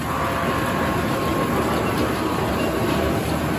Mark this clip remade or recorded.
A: recorded